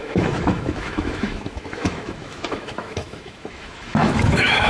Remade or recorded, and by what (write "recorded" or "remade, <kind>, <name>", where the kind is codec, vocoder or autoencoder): remade, autoencoder, DAC-VAE